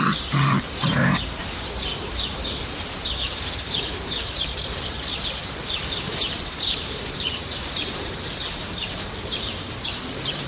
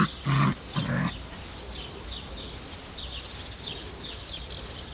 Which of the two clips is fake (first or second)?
first